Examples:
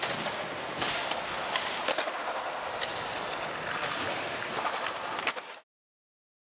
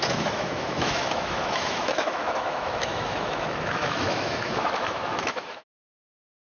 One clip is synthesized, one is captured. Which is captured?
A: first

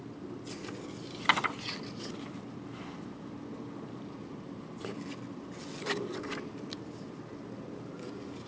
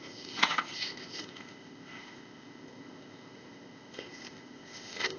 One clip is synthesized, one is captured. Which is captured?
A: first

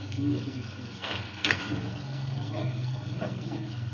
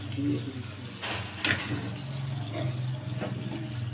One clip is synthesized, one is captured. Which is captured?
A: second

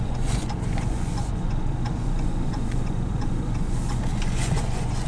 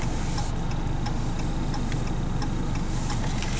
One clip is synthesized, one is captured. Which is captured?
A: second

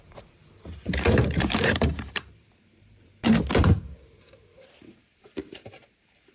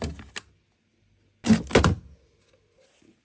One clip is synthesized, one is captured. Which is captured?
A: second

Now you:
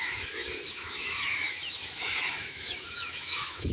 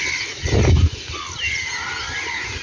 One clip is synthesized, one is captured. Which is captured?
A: second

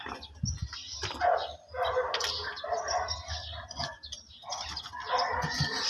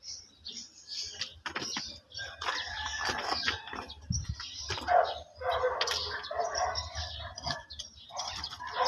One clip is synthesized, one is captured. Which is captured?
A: first